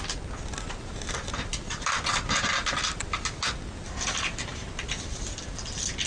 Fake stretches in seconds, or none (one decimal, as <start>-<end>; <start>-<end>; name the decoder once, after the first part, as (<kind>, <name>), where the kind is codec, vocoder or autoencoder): none